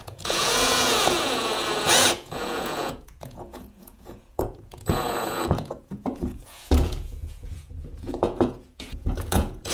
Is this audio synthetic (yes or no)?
yes